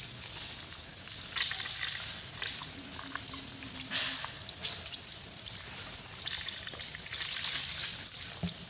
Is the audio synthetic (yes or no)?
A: no